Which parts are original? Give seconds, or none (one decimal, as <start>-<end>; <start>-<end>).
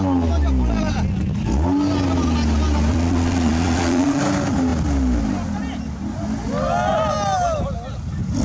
0.0-2.9; 4.2-8.4